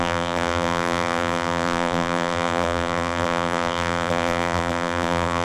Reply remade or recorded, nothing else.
remade